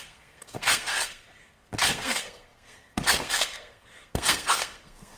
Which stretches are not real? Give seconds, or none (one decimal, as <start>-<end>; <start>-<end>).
0.0-5.2